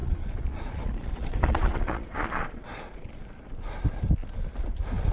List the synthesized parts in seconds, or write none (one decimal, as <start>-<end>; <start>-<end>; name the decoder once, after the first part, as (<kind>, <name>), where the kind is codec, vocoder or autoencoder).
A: 0.0-3.1 (vocoder, Vocos)